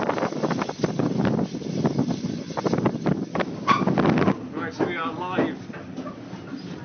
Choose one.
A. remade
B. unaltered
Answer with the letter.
B